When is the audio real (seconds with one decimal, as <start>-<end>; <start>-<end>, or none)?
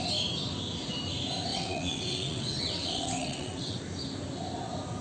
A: 0.0-1.5; 3.8-5.0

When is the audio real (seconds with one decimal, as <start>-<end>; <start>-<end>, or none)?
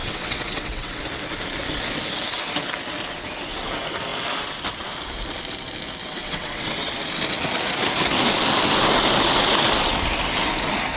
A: 1.0-6.0; 6.9-11.0